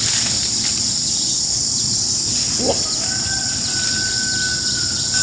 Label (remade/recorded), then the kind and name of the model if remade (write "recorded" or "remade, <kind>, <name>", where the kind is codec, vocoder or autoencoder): recorded